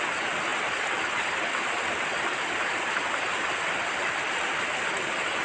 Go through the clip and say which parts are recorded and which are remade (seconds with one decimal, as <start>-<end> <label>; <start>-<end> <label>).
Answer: 0.0-5.4 recorded